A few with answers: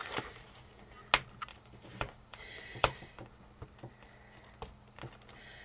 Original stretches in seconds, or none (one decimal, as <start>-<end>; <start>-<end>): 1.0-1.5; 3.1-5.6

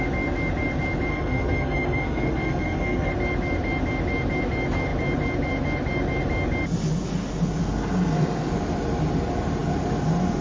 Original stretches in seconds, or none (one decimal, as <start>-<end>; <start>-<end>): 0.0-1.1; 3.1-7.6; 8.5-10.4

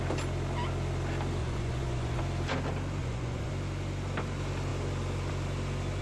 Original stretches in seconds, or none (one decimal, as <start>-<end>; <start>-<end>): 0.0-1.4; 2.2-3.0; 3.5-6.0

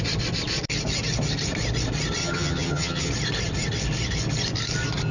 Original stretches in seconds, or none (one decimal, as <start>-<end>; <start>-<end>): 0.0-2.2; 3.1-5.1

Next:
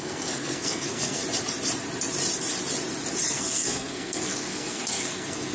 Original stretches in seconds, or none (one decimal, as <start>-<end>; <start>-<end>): 1.2-3.3